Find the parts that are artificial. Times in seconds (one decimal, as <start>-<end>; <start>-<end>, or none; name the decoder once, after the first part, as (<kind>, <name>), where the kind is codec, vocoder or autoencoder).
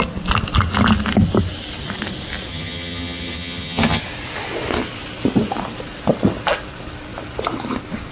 2.5-4.0 (vocoder, HiFi-GAN)